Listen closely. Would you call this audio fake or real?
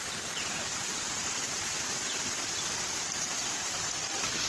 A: fake